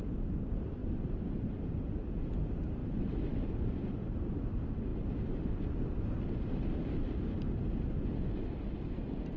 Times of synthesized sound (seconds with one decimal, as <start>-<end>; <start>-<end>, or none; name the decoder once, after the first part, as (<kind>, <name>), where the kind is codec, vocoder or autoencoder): 0.8-1.6 (vocoder, BigVGAN v2); 2.8-3.5